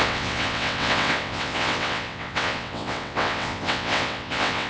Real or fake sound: fake